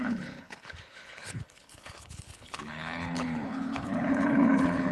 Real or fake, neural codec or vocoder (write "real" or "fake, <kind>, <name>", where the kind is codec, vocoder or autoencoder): fake, codec, HILCodec